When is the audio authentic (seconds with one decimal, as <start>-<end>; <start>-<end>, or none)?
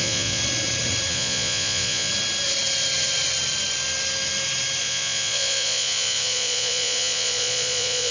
0.4-1.1; 2.1-4.8